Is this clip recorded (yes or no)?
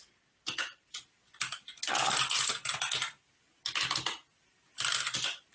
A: yes